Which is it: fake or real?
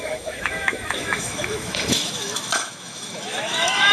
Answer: fake